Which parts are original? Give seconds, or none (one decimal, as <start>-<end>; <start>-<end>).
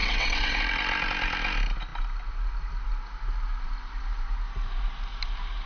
0.6-5.7